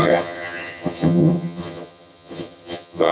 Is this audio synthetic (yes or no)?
yes